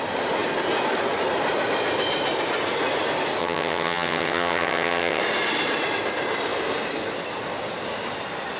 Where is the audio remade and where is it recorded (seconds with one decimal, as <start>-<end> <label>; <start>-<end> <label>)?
0.0-3.4 recorded; 3.4-5.2 remade; 5.2-8.6 recorded